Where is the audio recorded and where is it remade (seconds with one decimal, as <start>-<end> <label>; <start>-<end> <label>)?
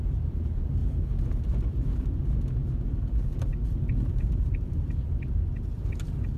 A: 0.0-0.8 remade; 0.8-3.0 recorded; 3.0-3.5 remade; 3.5-4.1 recorded; 4.1-6.4 remade